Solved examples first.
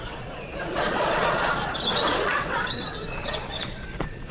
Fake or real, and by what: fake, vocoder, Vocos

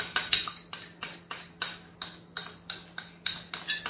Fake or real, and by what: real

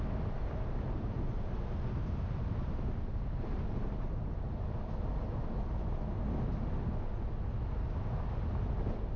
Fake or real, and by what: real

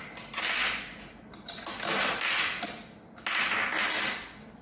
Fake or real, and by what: real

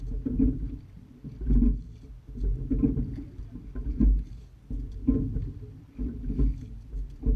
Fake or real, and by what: real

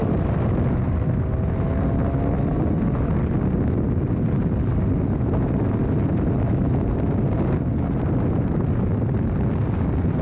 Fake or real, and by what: real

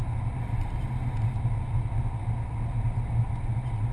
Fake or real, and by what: real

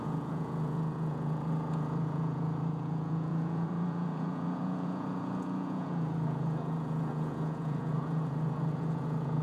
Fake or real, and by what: fake, vocoder, Vocos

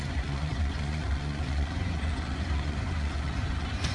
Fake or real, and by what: fake, vocoder, Vocos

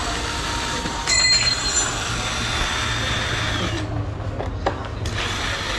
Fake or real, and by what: real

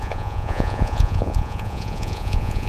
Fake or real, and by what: fake, vocoder, Vocos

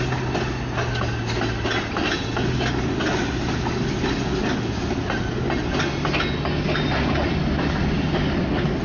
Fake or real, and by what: real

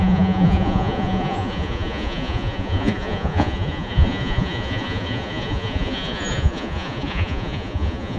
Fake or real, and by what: fake, vocoder, Vocos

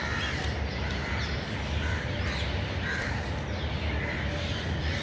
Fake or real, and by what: real